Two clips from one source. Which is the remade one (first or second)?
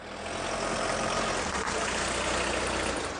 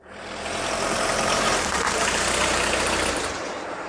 second